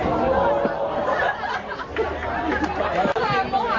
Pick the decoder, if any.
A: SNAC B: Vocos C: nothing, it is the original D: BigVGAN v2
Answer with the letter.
C